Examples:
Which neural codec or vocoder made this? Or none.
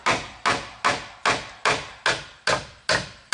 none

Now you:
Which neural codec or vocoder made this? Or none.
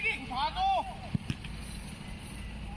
none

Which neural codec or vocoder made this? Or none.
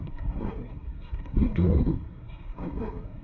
codec, SNAC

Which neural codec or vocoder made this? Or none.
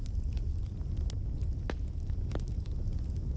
none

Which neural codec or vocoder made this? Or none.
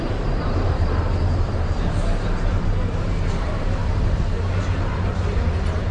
vocoder, BigVGAN v2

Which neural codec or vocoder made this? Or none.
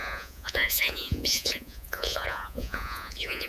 vocoder, Vocos